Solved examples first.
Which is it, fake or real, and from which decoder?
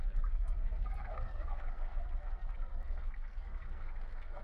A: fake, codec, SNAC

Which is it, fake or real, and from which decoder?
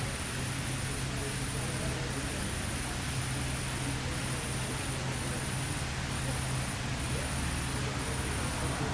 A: real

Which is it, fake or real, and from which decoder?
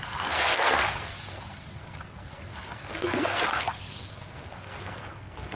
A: fake, codec, SNAC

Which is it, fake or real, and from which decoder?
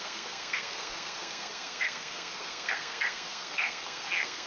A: fake, codec, SNAC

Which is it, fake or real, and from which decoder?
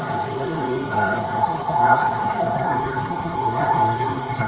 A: fake, codec, SNAC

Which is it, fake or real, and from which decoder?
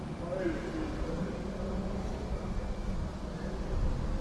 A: real